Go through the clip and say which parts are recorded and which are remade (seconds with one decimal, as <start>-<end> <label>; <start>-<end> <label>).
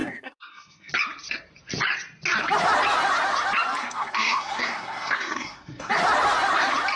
0.0-0.9 remade; 0.9-3.8 recorded; 3.8-5.9 remade; 5.9-7.0 recorded